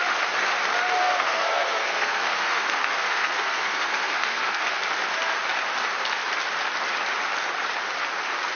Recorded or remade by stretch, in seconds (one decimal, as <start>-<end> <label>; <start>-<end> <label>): 0.0-1.0 recorded; 1.0-4.8 remade; 4.8-8.6 recorded